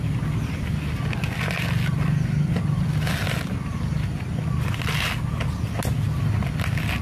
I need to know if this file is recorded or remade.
recorded